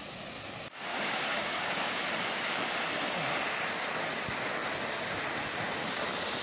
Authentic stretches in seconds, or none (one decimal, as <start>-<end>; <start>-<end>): 0.0-0.9; 2.0-6.4